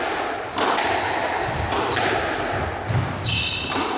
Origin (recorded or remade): recorded